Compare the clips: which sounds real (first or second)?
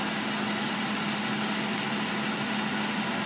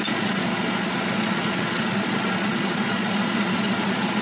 first